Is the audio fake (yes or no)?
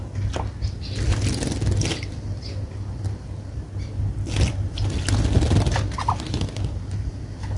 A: no